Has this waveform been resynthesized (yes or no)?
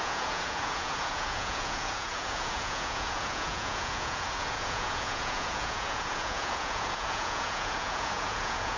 yes